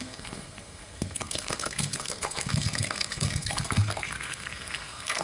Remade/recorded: remade